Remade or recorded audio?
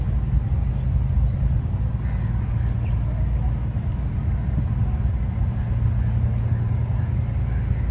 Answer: recorded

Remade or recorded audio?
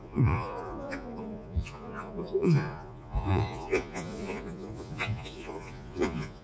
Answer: remade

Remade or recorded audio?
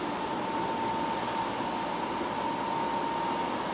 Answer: recorded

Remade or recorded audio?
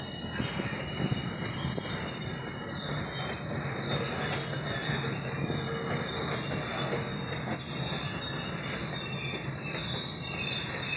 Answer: recorded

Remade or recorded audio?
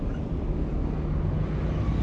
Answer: recorded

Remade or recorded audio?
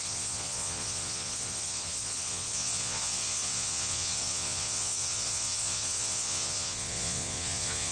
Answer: remade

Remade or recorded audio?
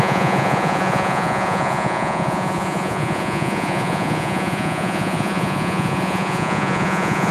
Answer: remade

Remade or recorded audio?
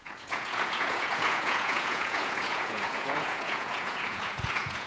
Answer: remade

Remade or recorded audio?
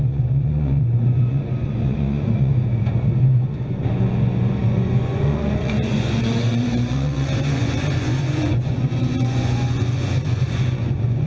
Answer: remade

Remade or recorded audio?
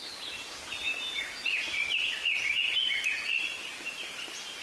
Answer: recorded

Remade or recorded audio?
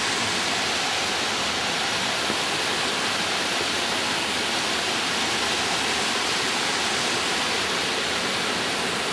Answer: recorded